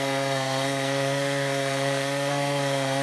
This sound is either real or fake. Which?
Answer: fake